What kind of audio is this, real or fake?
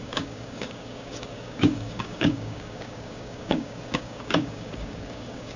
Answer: fake